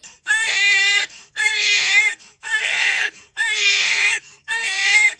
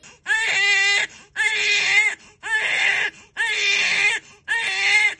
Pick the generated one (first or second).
first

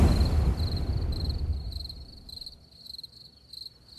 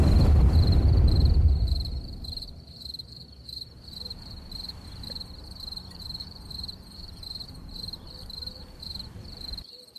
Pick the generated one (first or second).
second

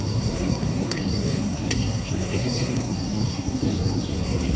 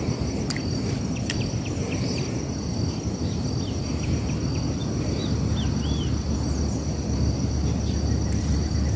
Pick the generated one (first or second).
first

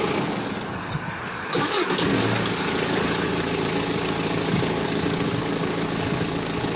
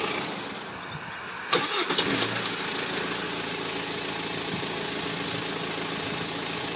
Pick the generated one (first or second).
first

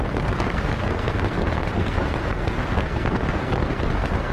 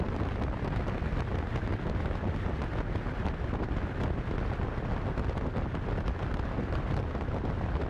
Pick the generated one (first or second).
first